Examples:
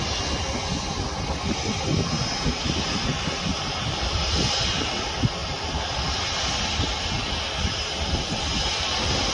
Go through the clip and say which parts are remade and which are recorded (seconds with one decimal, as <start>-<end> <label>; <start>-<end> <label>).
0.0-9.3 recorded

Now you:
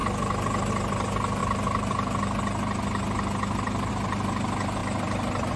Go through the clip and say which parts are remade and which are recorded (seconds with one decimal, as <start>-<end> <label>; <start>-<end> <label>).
0.0-5.6 recorded

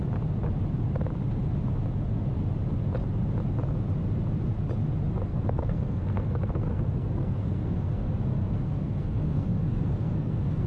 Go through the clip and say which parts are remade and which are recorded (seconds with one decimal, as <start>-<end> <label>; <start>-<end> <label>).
0.0-5.3 recorded; 5.3-10.7 remade

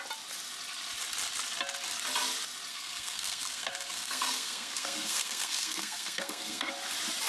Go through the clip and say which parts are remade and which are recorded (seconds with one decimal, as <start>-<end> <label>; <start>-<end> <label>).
0.0-2.7 recorded; 2.7-6.7 remade; 6.7-7.3 recorded